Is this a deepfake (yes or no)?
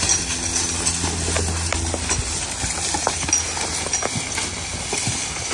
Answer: no